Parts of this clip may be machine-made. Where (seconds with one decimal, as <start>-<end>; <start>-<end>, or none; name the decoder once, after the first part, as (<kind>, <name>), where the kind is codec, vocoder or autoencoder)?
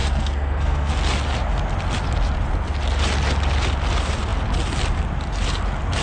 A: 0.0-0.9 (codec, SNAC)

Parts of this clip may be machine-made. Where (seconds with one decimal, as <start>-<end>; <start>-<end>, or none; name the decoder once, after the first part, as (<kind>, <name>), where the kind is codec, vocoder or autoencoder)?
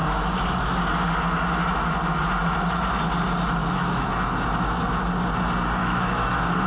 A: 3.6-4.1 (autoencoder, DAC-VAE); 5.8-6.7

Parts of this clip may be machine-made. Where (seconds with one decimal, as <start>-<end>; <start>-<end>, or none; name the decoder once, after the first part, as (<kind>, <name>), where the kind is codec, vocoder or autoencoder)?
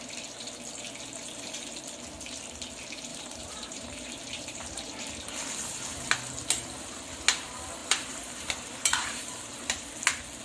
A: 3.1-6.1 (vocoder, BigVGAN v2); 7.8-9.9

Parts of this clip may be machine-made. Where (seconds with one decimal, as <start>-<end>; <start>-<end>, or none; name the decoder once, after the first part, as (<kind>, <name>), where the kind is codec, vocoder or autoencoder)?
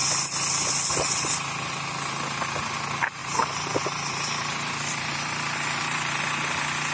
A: 3.2-6.2 (vocoder, BigVGAN v2)